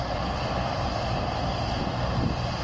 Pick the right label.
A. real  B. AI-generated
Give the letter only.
A